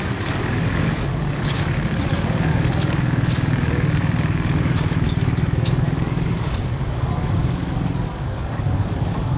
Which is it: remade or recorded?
remade